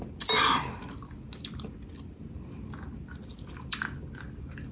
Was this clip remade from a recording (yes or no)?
no